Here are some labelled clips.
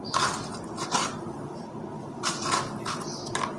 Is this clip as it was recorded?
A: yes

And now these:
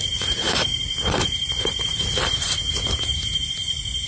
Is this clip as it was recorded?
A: no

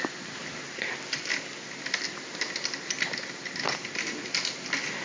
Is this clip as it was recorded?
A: yes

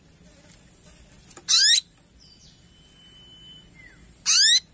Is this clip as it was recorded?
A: yes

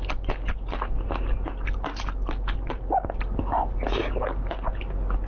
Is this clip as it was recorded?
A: yes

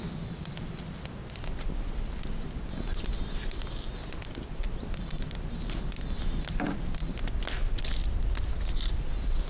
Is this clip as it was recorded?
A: yes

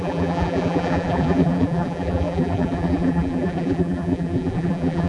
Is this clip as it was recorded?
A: no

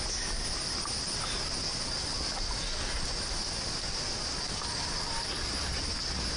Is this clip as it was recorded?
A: yes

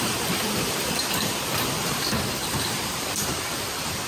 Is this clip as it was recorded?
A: no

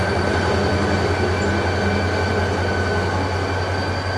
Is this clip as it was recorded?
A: yes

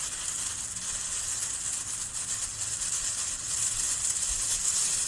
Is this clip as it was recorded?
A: yes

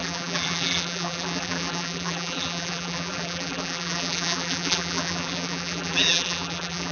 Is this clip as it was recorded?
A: no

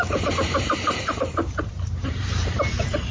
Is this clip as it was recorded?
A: no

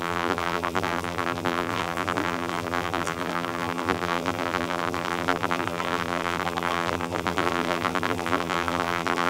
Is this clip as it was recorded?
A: no